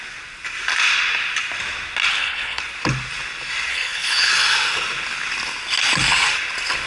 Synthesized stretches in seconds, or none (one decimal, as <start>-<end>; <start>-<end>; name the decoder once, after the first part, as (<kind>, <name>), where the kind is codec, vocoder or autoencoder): 2.1-2.6 (codec, HILCodec); 3.7-4.3